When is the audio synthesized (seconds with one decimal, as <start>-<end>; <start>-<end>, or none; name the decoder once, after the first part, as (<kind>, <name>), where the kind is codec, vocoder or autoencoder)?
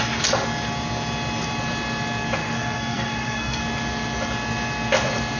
2.4-3.6 (codec, SNAC)